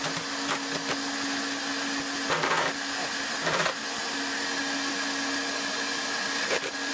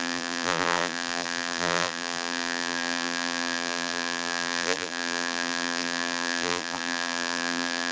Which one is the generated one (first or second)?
second